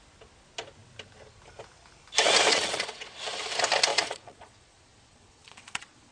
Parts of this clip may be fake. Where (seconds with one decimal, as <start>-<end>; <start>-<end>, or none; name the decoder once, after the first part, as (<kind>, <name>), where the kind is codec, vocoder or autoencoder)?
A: 2.5-3.2 (vocoder, Vocos); 3.9-6.1